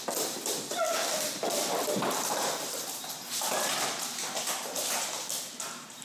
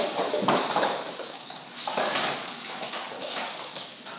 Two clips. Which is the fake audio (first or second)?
second